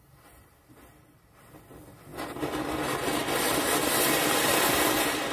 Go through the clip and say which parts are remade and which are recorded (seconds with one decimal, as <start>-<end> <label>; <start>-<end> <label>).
0.0-5.3 recorded